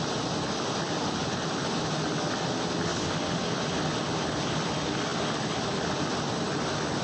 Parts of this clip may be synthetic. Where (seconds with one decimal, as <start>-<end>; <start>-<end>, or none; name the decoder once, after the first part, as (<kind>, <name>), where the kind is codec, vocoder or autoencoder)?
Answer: 1.2-2.1 (vocoder, BigVGAN v2)